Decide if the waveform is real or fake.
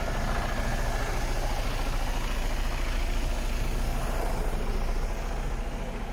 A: real